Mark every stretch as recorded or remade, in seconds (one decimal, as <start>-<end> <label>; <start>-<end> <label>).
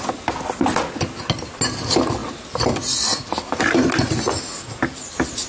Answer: 0.0-5.5 recorded